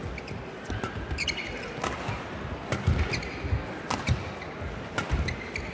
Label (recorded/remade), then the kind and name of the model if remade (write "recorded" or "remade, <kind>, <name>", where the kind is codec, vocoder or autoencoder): recorded